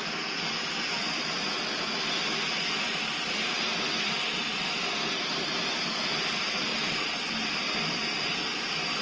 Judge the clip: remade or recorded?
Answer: recorded